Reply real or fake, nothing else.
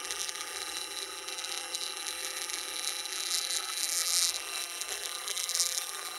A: fake